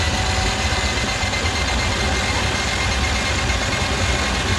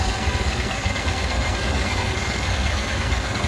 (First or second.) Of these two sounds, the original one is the first